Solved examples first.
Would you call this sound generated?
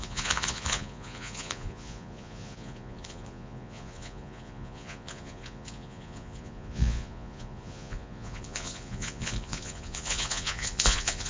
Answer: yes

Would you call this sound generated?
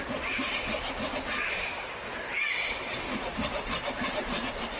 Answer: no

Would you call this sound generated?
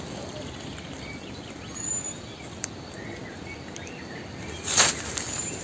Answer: no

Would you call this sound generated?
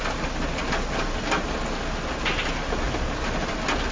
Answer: no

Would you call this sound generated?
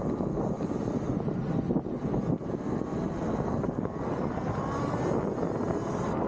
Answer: no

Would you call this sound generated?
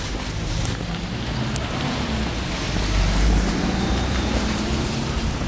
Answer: yes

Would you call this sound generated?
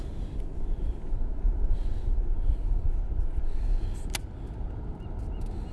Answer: no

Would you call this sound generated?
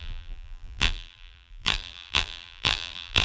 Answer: yes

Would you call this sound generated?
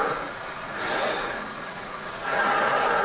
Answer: yes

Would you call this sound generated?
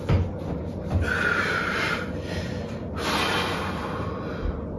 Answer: no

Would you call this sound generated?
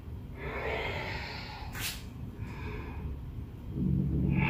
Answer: no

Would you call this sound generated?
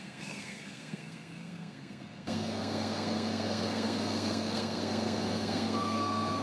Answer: yes